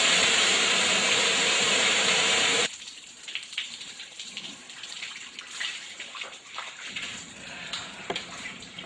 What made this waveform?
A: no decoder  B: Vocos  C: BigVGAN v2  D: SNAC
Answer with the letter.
C